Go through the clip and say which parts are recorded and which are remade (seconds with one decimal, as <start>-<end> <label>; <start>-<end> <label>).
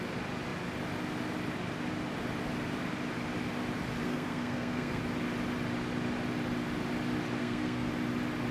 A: 0.0-4.0 recorded; 4.0-5.0 remade; 5.0-7.4 recorded; 7.4-7.9 remade; 7.9-8.5 recorded